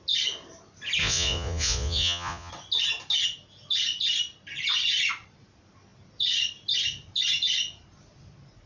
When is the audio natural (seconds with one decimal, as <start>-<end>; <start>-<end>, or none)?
0.0-1.0; 2.5-8.7